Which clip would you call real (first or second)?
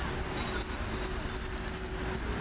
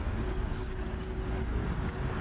first